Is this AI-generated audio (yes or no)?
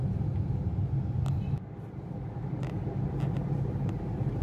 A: no